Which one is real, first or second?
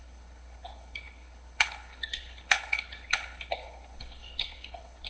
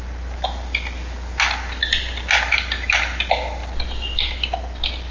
second